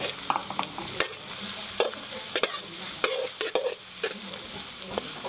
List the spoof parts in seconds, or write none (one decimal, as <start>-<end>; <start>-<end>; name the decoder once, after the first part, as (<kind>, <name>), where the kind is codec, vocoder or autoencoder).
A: none